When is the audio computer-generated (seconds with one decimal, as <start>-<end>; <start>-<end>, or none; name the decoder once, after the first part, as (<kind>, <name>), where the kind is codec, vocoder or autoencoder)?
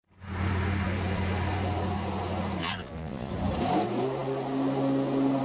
2.6-3.3 (vocoder, Vocos)